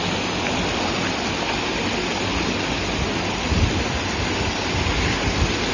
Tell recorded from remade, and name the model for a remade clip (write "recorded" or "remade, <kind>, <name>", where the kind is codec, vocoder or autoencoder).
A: recorded